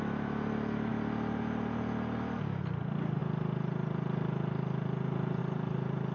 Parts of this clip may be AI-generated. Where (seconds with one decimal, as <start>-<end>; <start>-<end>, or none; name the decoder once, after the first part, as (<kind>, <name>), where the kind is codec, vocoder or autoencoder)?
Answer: none